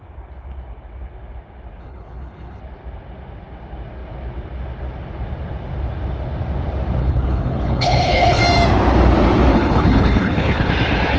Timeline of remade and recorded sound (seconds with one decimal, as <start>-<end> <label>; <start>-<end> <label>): 0.0-1.8 recorded; 1.8-2.6 remade; 2.6-7.0 recorded; 7.0-8.4 remade; 8.4-9.5 recorded; 9.5-10.7 remade; 10.7-11.2 recorded